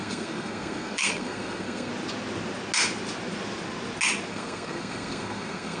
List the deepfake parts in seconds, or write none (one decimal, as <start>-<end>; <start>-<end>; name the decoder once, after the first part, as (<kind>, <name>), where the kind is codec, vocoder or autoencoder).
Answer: 0.0-1.9 (codec, SNAC); 4.3-5.8